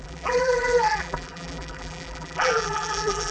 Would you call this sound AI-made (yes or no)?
yes